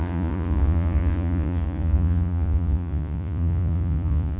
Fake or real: fake